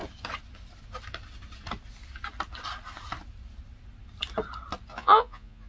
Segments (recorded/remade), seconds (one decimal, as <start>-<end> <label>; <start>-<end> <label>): 0.0-4.9 recorded; 4.9-5.7 remade